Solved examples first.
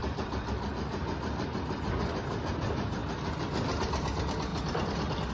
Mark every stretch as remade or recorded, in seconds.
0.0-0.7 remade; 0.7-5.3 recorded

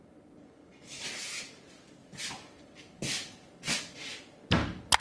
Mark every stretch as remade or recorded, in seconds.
0.0-2.0 recorded; 2.0-2.6 remade; 2.6-5.0 recorded

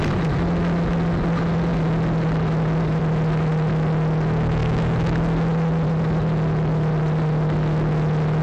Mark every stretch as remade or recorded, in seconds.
0.0-8.4 recorded